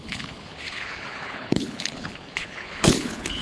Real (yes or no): no